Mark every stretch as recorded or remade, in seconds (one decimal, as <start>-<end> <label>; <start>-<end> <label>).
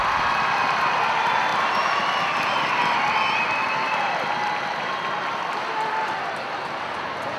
0.0-7.4 recorded